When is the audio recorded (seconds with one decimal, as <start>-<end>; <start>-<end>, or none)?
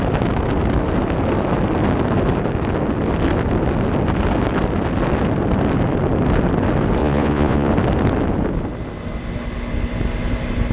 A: 0.0-7.0; 7.7-10.7